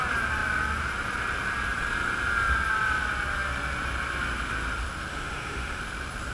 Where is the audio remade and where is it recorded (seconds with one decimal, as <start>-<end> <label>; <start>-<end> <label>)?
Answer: 0.0-5.1 recorded; 5.1-5.8 remade; 5.8-6.3 recorded